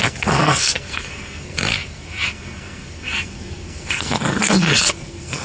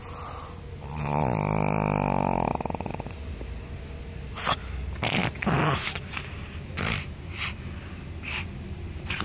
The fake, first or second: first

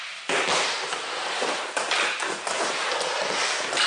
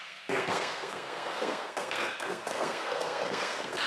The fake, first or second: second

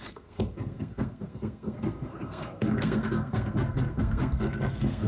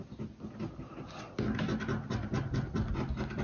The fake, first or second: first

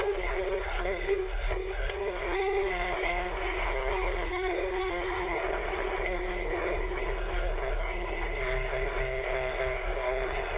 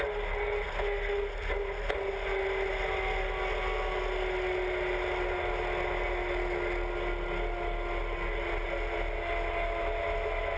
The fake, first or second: first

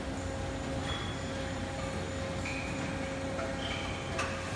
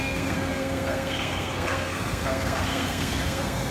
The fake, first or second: second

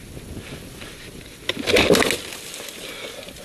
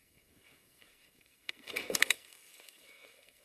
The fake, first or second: second